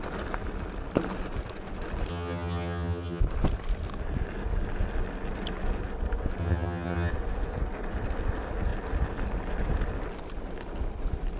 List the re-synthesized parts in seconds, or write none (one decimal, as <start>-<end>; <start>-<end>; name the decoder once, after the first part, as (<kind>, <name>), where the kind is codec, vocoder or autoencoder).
2.1-3.2 (vocoder, HiFi-GAN); 6.4-7.1